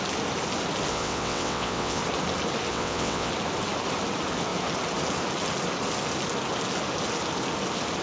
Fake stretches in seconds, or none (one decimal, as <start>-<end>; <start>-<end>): 0.9-2.0; 2.7-3.3